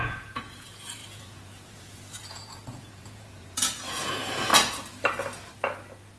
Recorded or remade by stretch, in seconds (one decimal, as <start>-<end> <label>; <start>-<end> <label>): 0.0-4.5 remade; 4.5-6.2 recorded